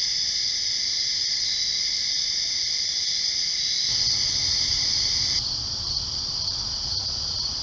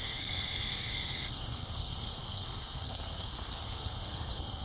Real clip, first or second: first